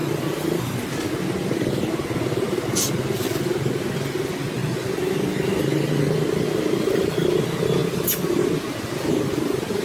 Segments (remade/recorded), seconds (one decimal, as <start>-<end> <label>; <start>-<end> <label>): 0.0-1.1 remade; 1.1-9.8 recorded